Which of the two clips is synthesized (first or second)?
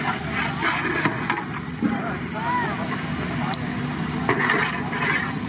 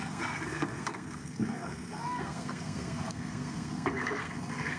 second